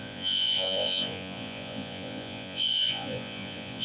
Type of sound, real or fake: fake